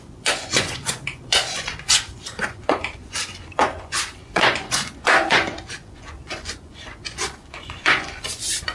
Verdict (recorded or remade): remade